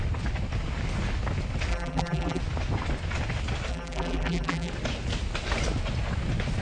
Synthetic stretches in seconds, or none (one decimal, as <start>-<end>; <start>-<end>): 1.7-2.4; 3.7-4.7